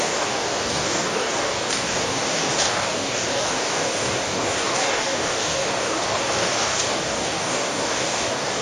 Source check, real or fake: fake